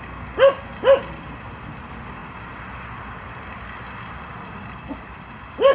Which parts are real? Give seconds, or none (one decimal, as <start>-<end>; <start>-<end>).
0.0-5.7

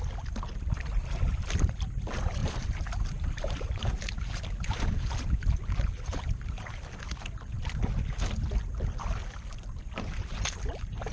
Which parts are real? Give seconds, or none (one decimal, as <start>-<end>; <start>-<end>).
0.0-2.4; 6.4-11.1